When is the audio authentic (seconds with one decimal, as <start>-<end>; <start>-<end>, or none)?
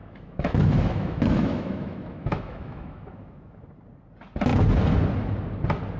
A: 3.6-6.0